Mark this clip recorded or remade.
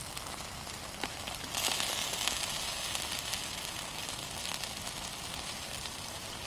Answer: recorded